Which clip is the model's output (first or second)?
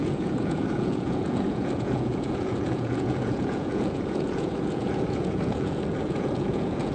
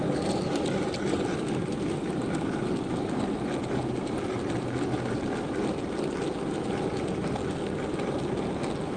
first